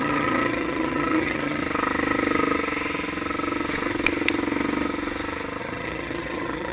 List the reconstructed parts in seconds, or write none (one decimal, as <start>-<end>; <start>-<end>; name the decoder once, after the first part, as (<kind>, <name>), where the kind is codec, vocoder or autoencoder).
0.0-1.6 (vocoder, HiFi-GAN); 5.6-6.7